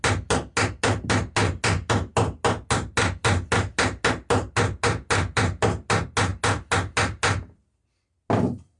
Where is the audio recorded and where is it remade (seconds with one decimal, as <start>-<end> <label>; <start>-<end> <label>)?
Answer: 0.0-8.8 recorded